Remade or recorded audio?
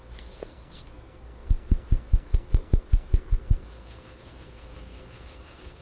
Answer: remade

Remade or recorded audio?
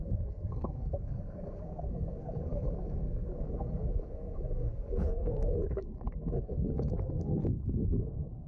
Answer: remade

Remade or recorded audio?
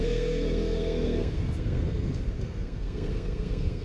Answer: remade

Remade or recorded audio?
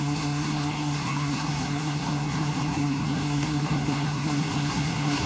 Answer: remade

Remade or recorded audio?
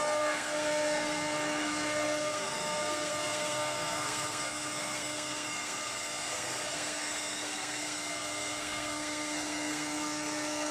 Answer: remade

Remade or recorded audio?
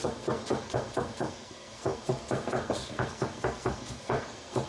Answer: remade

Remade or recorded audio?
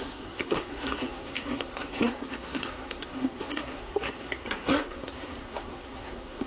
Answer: remade